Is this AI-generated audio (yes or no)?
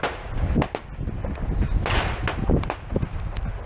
no